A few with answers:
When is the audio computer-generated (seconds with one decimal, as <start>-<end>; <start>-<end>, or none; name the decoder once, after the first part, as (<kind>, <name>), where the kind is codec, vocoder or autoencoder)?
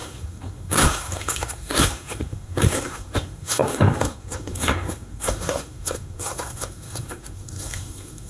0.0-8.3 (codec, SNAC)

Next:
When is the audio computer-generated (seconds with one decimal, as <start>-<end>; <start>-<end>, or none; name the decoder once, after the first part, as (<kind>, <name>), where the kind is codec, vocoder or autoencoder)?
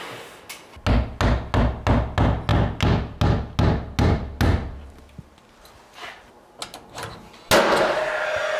none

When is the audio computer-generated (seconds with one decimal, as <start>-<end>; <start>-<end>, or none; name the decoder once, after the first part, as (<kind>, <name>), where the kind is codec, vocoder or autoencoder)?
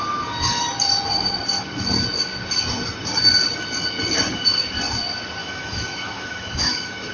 5.4-7.1 (autoencoder, DAC-VAE)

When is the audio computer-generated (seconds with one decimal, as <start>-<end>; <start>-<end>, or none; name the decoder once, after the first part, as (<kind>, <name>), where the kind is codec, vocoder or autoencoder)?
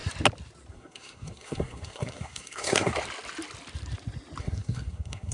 0.7-2.9 (codec, SNAC); 4.4-5.3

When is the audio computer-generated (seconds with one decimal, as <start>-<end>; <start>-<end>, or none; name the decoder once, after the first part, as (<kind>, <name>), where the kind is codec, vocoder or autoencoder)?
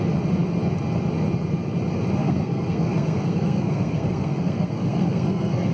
2.2-5.7 (codec, SNAC)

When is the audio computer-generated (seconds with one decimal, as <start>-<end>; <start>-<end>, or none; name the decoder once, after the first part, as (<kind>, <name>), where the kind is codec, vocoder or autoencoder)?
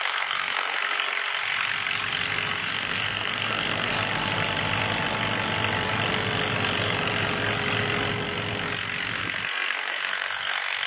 0.0-0.8 (codec, SNAC); 2.7-3.9; 9.2-10.9